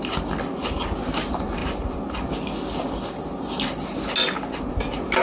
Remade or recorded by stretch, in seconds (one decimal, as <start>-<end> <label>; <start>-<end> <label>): 0.0-5.2 recorded